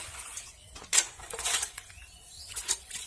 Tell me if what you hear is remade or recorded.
remade